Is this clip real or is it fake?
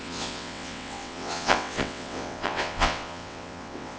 fake